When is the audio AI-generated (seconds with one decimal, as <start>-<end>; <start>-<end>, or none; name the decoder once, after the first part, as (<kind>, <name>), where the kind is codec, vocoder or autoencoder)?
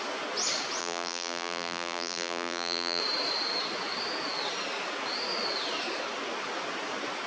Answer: 0.8-3.0 (vocoder, BigVGAN v2)